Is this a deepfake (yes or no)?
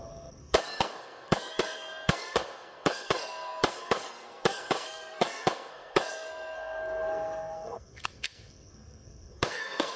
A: yes